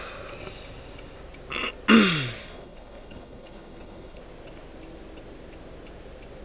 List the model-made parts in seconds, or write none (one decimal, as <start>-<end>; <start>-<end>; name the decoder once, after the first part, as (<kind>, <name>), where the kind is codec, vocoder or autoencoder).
2.4-4.2 (codec, HILCodec)